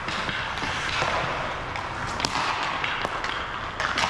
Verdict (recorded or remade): recorded